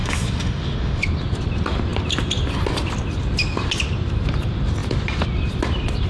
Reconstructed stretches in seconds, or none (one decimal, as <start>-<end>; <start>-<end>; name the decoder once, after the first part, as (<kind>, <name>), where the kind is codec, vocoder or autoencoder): 0.0-1.0 (autoencoder, DAC-VAE)